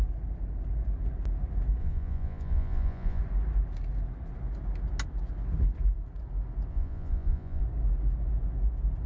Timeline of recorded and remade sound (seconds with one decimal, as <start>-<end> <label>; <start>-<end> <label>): 0.0-1.8 recorded; 1.8-3.2 remade; 3.2-6.7 recorded; 6.7-7.6 remade; 7.6-9.1 recorded